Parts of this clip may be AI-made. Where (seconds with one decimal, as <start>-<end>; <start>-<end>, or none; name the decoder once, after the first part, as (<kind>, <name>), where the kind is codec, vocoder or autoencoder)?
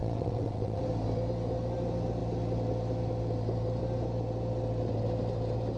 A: 0.0-0.8 (vocoder, WaveNeXt)